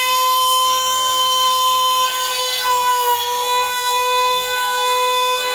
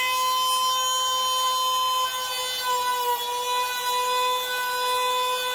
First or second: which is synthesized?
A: first